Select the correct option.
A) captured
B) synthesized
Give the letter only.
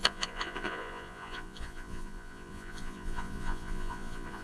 B